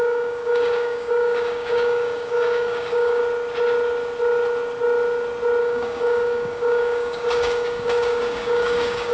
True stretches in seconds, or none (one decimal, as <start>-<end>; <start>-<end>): 3.2-5.6